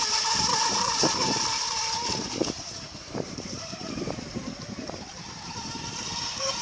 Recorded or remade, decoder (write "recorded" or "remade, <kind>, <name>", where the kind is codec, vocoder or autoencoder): remade, vocoder, BigVGAN v2